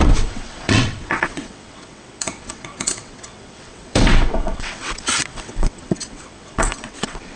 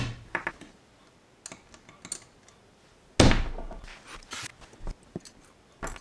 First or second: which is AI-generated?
first